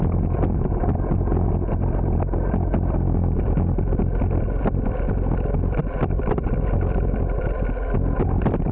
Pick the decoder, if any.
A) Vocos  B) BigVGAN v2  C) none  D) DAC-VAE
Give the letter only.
C